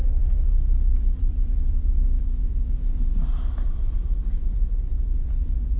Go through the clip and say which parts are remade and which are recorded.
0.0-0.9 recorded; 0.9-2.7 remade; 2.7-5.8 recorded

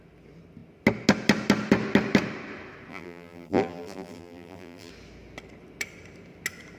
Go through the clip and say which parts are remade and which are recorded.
0.0-2.9 recorded; 2.9-4.9 remade; 4.9-6.8 recorded

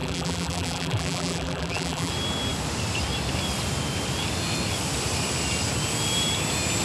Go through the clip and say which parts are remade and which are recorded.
0.0-2.1 remade; 2.1-6.8 recorded

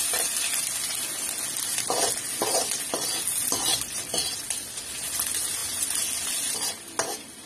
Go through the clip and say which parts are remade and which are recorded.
0.0-7.5 recorded

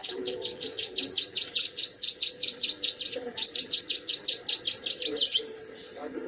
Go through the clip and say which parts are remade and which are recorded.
0.0-3.8 remade; 3.8-6.3 recorded

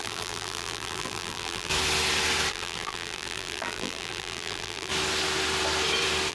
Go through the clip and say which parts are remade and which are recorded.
0.0-1.7 remade; 1.7-2.5 recorded; 2.5-4.9 remade; 4.9-6.3 recorded

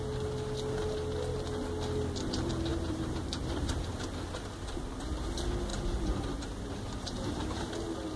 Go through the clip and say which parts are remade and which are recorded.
0.0-2.7 recorded; 2.7-3.9 remade; 3.9-5.7 recorded; 5.7-7.7 remade; 7.7-8.2 recorded

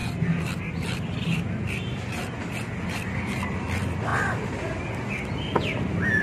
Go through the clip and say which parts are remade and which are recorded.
0.0-6.2 recorded